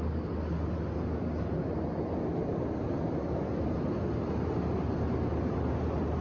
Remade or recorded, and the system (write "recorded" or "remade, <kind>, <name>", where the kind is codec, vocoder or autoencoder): recorded